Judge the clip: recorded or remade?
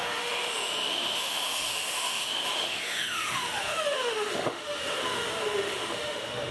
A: remade